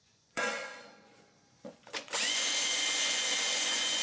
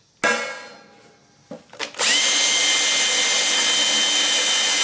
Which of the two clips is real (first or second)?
second